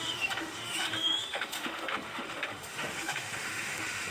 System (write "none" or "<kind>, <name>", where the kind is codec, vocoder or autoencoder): autoencoder, DAC-VAE